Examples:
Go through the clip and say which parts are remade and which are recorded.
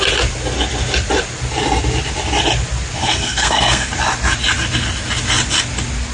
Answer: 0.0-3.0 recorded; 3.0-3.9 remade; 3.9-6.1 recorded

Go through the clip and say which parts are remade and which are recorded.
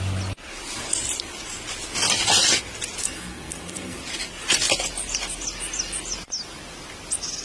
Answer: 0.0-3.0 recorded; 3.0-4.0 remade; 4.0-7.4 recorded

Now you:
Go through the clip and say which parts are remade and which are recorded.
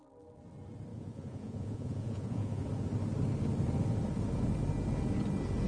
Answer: 0.0-0.9 recorded; 0.9-2.6 remade; 2.6-5.7 recorded